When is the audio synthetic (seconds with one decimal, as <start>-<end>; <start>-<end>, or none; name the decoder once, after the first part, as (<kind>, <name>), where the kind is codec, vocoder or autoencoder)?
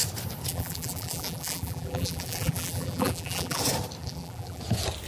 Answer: 0.5-3.6 (vocoder, BigVGAN v2); 4.0-4.6